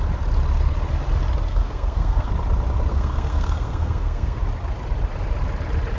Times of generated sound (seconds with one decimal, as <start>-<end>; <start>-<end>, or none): 1.5-2.3; 2.9-4.4